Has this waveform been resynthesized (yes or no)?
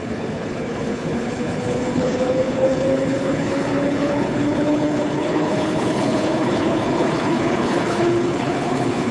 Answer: yes